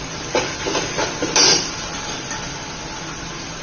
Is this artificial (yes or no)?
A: no